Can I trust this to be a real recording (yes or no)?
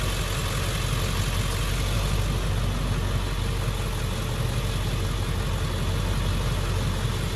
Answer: yes